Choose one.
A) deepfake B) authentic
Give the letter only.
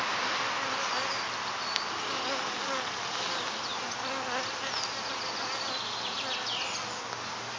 B